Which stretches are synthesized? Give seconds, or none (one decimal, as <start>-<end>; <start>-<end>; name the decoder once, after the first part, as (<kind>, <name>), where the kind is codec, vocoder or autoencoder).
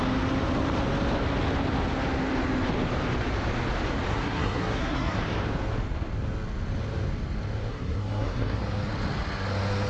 4.1-5.2 (codec, SNAC); 7.7-8.6